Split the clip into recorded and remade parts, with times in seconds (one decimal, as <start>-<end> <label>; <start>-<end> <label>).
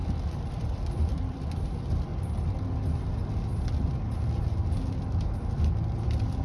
0.0-0.5 recorded; 0.5-2.1 remade; 2.1-4.4 recorded; 4.4-6.4 remade